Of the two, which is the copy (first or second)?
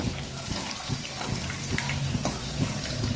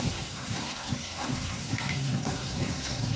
second